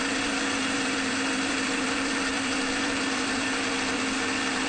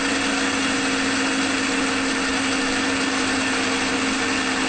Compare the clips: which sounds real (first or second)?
second